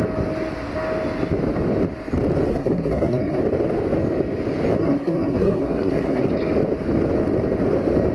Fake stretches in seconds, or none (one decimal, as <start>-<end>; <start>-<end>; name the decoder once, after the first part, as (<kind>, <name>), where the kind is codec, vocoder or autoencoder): 2.5-3.4 (codec, SNAC); 4.8-6.2